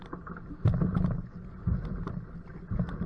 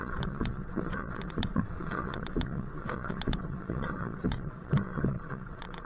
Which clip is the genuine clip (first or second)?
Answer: first